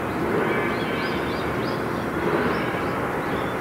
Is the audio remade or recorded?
recorded